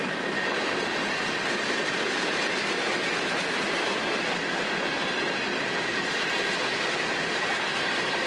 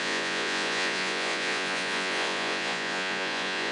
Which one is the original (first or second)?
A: first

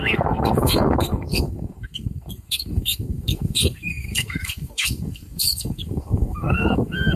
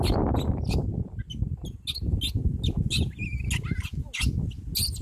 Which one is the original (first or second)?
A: second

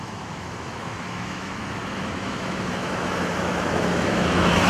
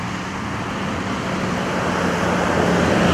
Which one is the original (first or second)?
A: second